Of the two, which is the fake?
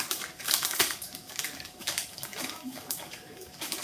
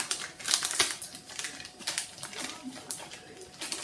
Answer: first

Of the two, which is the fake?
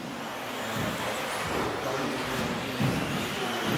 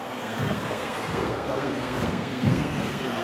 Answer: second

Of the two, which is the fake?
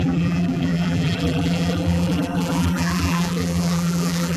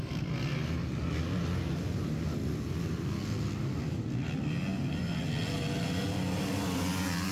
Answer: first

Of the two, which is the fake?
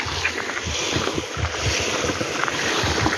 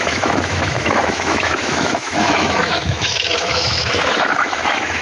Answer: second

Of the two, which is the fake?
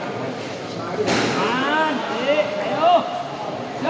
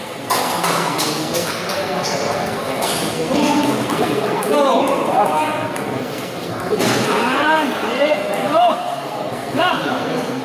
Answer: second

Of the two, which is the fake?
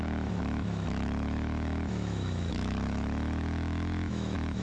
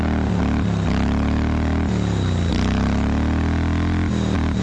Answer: first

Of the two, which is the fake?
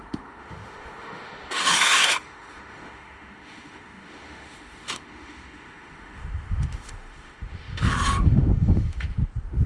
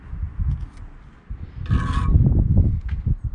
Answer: first